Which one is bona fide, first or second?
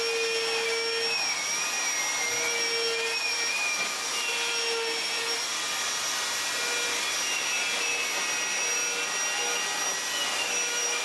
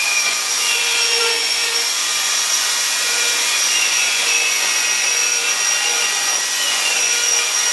first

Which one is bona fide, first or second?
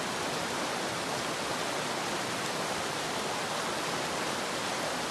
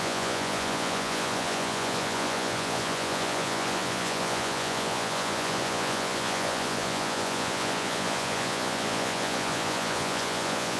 first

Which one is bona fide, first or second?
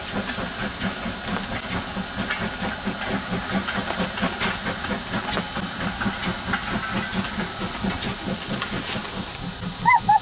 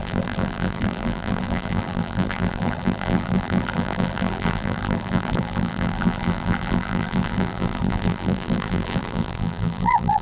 first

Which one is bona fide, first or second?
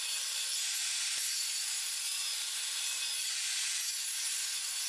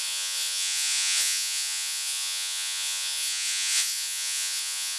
first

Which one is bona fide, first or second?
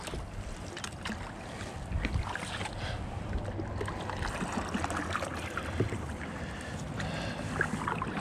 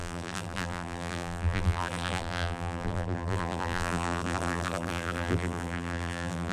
first